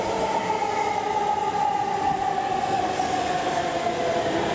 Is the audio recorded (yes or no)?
yes